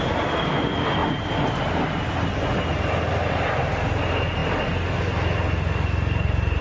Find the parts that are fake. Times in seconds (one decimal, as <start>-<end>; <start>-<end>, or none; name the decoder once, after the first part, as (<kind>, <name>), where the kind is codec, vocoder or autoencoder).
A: none